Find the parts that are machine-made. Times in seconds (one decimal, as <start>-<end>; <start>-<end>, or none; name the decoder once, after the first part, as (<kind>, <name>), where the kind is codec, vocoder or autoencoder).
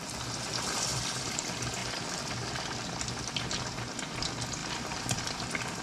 0.9-1.4 (vocoder, BigVGAN v2); 1.8-3.2; 4.6-5.8